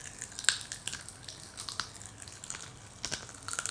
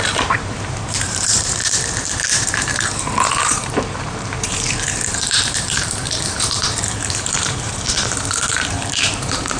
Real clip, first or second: first